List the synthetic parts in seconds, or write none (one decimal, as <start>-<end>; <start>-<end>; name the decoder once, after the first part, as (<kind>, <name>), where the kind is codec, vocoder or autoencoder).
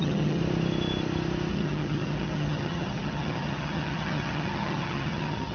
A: 0.0-0.4 (vocoder, HiFi-GAN); 1.5-5.5